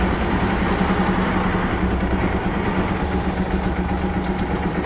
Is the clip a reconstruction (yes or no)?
no